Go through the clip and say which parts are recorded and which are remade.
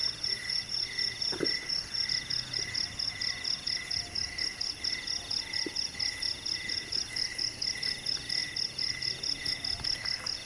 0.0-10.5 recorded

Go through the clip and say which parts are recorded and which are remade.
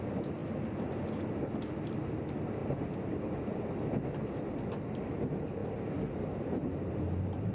0.0-7.5 recorded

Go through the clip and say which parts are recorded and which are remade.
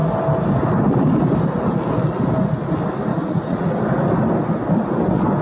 0.0-3.1 recorded; 3.1-3.7 remade; 3.7-5.4 recorded